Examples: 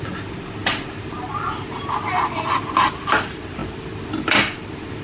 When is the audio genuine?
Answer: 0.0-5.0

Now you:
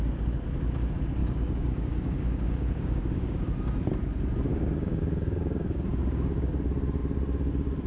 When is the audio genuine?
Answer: 0.0-1.2; 3.4-4.5; 6.5-7.9

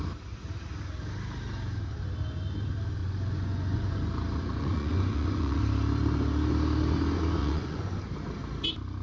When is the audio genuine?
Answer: 0.0-3.0; 5.6-7.4; 8.0-9.0

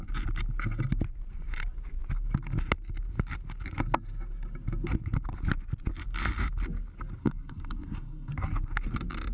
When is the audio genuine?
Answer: 0.0-7.2; 8.3-9.3

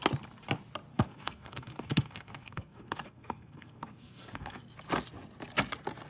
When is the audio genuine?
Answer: 0.0-0.9; 4.6-6.1

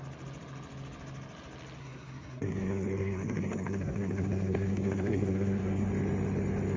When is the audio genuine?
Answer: 0.0-1.8; 5.9-6.8